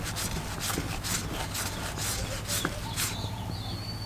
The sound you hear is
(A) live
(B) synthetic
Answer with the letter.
A